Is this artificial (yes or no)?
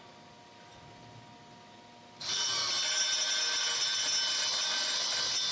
no